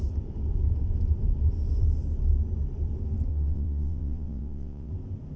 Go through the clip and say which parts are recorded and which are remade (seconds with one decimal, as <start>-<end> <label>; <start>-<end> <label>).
0.0-3.3 recorded; 3.3-4.9 remade; 4.9-5.4 recorded